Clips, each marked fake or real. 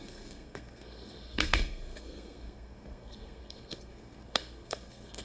fake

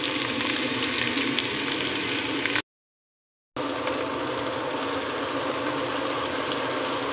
real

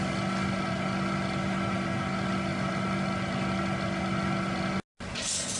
real